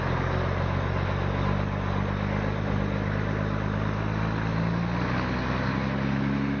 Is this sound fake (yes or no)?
no